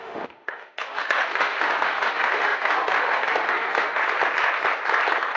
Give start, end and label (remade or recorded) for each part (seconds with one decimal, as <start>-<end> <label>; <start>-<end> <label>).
0.0-4.0 remade; 4.0-5.4 recorded